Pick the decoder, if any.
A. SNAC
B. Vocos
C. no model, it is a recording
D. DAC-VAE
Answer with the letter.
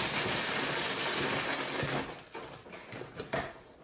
C